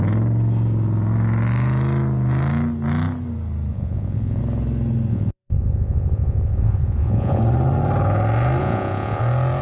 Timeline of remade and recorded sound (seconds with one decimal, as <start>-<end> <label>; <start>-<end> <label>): 0.0-3.7 recorded; 3.7-4.4 remade; 4.4-5.1 recorded; 5.1-7.4 remade; 7.4-8.6 recorded; 8.6-9.2 remade; 9.2-9.6 recorded